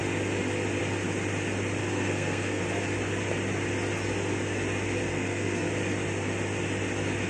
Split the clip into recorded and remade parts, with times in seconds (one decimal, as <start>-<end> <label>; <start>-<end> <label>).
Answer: 0.0-1.8 recorded; 1.8-2.6 remade; 2.6-5.1 recorded; 5.1-5.7 remade; 5.7-7.3 recorded